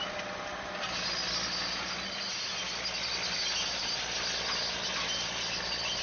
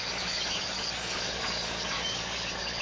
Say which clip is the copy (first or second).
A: second